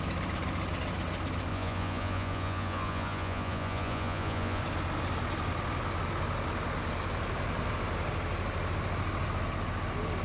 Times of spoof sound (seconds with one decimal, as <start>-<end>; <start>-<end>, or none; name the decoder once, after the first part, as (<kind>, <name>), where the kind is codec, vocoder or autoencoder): 1.5-4.6 (vocoder, Vocos)